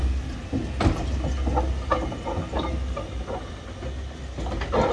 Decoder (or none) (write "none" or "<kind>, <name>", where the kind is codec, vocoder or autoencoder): none